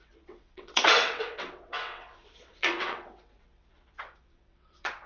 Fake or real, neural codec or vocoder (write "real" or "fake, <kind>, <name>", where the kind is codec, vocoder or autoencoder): fake, vocoder, WaveNeXt